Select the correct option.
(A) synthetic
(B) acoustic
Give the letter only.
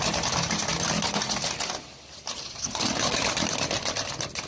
B